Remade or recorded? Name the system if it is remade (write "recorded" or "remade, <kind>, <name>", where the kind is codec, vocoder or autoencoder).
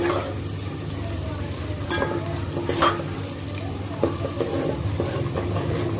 remade, vocoder, BigVGAN v2